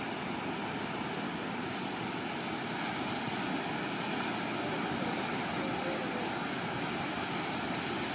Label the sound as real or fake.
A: real